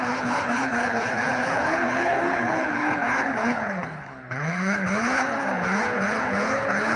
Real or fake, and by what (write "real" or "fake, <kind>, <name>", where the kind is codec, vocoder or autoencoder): fake, codec, HILCodec